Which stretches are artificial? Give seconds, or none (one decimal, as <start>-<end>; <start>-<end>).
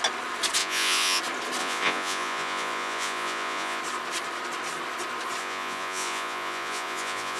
0.6-1.2; 1.6-3.8; 5.4-7.4